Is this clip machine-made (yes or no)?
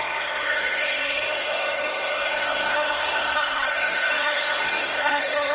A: yes